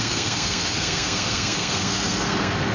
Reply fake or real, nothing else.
fake